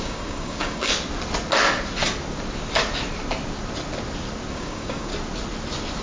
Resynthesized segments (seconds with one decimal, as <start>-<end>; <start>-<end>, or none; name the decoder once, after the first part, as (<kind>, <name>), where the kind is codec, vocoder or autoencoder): 0.0-0.9 (codec, DAC); 4.5-5.1